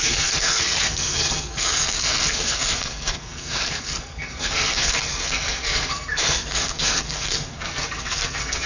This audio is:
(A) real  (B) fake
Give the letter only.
B